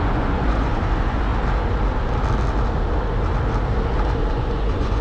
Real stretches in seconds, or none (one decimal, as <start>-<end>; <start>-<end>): 1.3-4.3